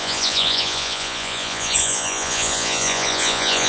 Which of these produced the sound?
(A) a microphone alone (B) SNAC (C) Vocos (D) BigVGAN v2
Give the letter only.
C